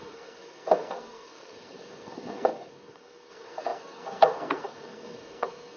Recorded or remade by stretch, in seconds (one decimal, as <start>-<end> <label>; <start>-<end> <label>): 0.0-5.8 remade